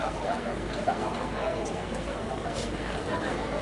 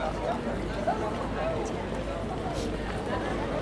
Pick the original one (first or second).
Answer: second